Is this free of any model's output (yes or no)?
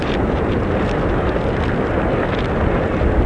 yes